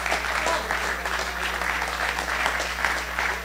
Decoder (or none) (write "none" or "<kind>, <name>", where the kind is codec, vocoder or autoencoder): none